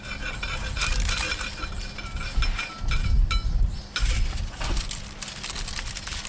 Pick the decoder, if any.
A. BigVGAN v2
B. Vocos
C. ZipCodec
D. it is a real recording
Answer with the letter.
D